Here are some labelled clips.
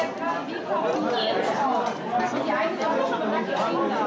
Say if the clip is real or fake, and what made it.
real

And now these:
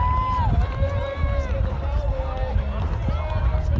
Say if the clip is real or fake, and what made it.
real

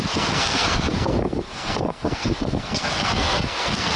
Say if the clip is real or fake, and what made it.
fake, codec, SNAC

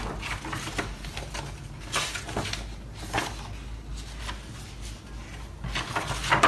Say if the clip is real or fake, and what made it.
real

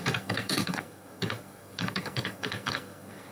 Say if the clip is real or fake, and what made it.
fake, codec, SNAC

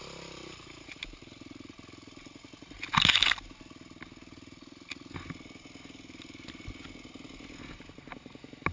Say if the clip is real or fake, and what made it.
real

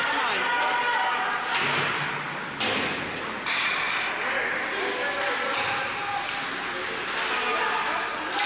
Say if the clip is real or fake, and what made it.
real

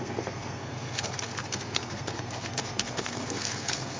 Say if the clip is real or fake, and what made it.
fake, codec, SNAC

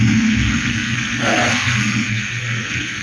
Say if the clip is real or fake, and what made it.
fake, codec, SNAC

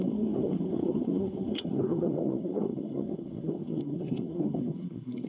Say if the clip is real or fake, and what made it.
fake, codec, SNAC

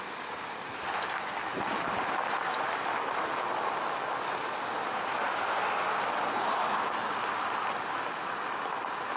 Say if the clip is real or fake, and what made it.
real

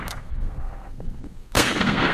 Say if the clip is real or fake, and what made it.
fake, codec, SNAC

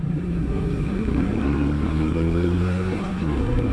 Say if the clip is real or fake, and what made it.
fake, codec, SNAC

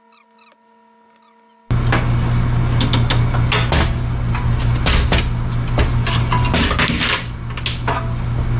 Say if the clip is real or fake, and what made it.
real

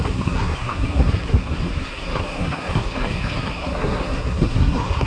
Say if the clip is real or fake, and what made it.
fake, codec, SNAC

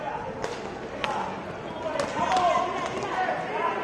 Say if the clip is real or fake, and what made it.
real